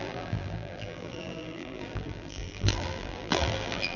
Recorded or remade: remade